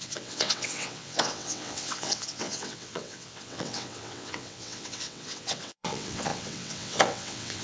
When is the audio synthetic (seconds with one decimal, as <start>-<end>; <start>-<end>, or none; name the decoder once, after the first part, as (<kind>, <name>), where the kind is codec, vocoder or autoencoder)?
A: 0.0-7.6 (vocoder, WaveNeXt)